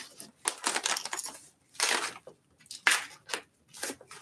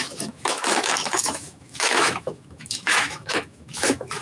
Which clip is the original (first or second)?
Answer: first